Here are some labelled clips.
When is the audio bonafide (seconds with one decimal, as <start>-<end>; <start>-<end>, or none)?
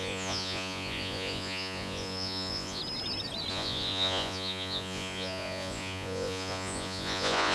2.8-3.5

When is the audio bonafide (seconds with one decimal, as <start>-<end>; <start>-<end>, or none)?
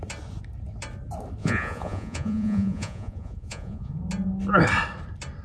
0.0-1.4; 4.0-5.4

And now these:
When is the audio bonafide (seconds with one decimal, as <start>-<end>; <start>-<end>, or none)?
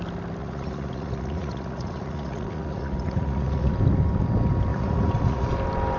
0.0-0.4; 3.7-4.7; 5.5-6.0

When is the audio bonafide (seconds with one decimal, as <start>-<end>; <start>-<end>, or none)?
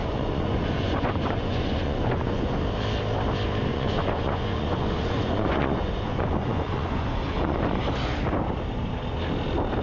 2.6-3.7; 7.8-9.8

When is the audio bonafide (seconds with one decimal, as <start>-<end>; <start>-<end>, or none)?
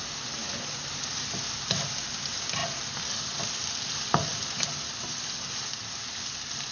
0.0-6.7